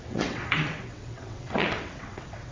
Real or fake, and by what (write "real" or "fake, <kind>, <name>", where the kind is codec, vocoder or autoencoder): fake, vocoder, WaveNeXt